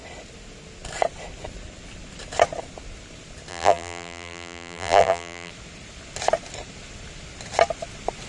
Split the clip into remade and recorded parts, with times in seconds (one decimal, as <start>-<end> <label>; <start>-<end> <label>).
0.0-3.5 recorded; 3.5-5.5 remade; 5.5-8.3 recorded

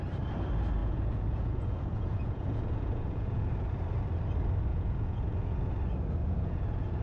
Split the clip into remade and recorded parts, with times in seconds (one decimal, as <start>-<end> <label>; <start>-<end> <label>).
0.0-0.8 recorded; 0.8-3.5 remade; 3.5-4.7 recorded; 4.7-5.7 remade; 5.7-6.2 recorded; 6.2-7.0 remade

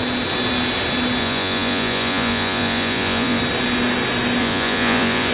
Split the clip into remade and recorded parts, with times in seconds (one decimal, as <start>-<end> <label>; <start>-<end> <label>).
0.0-1.2 recorded; 1.2-3.4 remade; 3.4-4.4 recorded; 4.4-5.3 remade

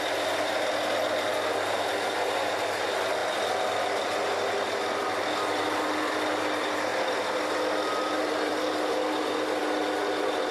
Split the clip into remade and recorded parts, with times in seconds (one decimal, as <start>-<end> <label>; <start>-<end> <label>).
0.0-6.9 recorded; 6.9-8.6 remade; 8.6-10.5 recorded